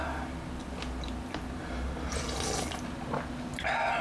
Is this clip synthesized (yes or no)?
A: no